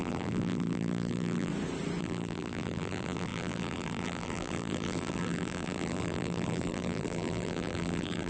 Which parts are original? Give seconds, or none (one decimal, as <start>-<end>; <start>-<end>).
1.5-2.0